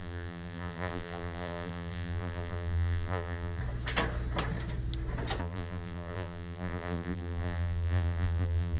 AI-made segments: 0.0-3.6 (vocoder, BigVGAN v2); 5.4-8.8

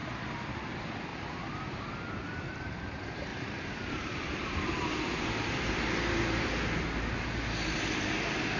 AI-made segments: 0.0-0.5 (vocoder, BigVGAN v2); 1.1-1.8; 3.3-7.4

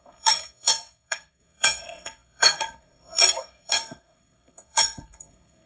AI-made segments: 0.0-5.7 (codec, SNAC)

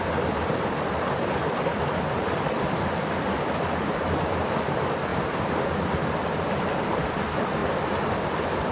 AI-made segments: 5.1-5.6 (vocoder, BigVGAN v2)